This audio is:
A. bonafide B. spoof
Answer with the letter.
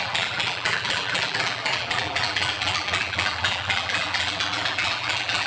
B